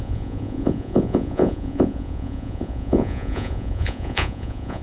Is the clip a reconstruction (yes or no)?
yes